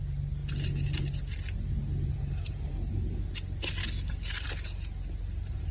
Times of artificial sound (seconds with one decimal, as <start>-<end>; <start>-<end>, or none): 3.8-4.3